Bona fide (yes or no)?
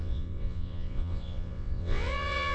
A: no